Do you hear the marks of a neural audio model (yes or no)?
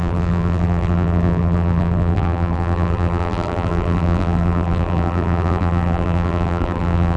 yes